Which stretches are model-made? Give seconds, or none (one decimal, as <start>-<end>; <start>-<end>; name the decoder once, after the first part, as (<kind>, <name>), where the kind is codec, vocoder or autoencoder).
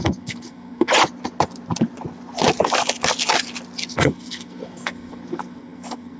0.0-0.9 (codec, SNAC); 3.9-6.2